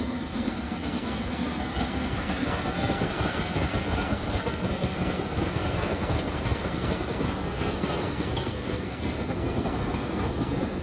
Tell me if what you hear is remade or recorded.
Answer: remade